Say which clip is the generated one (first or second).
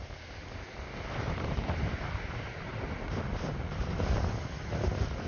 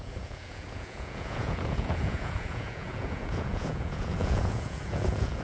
second